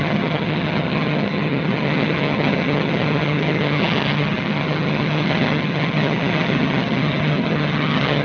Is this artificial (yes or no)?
yes